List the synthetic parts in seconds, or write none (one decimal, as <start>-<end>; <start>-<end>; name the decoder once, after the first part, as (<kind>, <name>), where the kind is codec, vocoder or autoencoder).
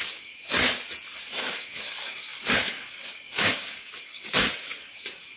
0.0-0.5 (codec, DAC); 1.5-5.4